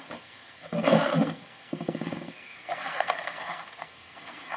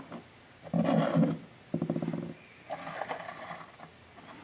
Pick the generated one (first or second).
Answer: first